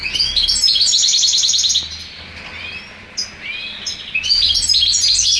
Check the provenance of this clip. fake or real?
real